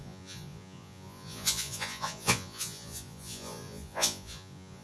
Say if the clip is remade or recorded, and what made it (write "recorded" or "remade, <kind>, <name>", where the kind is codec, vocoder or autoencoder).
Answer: remade, vocoder, Vocos